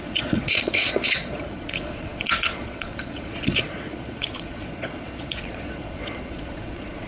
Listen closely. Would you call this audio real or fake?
fake